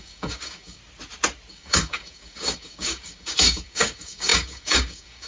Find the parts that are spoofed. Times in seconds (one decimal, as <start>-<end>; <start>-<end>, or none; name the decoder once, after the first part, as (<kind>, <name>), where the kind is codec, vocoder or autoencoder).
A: 0.0-0.8 (codec, DAC); 1.5-5.3